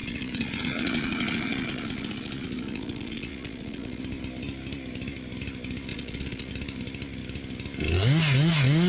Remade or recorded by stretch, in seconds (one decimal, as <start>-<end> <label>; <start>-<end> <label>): 0.0-4.0 remade; 4.0-5.9 recorded; 5.9-6.5 remade; 6.5-8.9 recorded